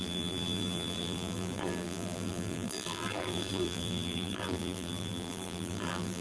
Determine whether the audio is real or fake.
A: fake